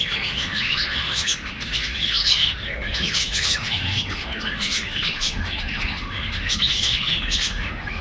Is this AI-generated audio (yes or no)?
yes